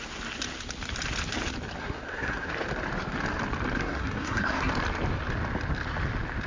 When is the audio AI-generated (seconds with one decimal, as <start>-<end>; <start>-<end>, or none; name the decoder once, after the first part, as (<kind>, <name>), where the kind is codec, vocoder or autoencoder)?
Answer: 1.8-2.5 (codec, SNAC); 3.8-4.7